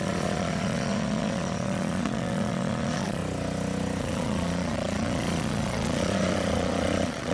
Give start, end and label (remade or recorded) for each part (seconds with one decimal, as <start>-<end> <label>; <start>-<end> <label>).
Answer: 0.0-3.2 remade; 3.2-4.0 recorded; 4.0-7.3 remade